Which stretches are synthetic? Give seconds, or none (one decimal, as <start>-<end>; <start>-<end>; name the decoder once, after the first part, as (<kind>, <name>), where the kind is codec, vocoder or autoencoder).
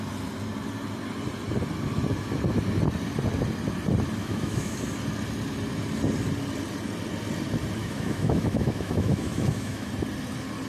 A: 4.2-4.8 (autoencoder, DAC-VAE); 7.8-9.9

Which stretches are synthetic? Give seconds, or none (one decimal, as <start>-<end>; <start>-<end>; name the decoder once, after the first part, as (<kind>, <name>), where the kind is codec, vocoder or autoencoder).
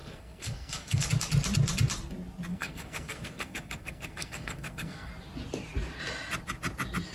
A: 0.0-1.1 (codec, SNAC); 2.5-5.1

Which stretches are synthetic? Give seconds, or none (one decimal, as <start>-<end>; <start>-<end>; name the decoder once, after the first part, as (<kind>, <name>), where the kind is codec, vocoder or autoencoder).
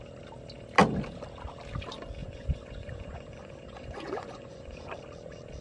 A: 2.2-4.9 (vocoder, Vocos)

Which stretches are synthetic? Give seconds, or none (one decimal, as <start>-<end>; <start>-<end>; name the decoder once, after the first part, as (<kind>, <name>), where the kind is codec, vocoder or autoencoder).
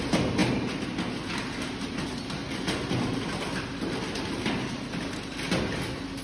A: none